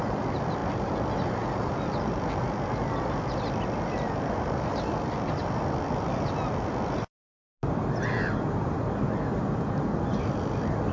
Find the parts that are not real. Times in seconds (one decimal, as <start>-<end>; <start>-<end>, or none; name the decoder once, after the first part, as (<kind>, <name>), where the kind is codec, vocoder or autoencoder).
none